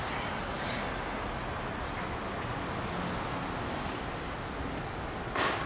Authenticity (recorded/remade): recorded